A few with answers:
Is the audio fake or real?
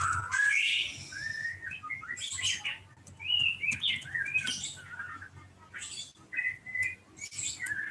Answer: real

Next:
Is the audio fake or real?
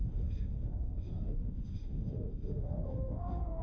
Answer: fake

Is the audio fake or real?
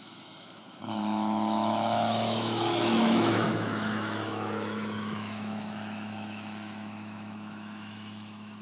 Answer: fake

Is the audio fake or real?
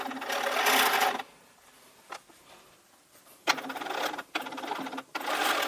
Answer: real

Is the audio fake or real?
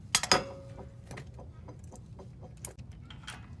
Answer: real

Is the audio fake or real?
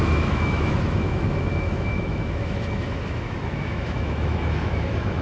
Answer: fake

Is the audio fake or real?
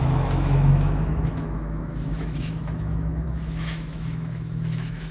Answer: fake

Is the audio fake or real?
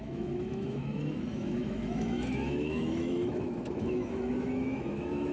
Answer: fake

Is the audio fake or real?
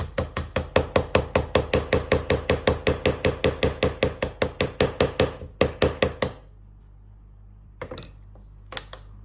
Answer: real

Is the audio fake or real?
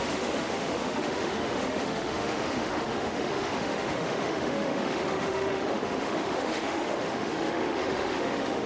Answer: fake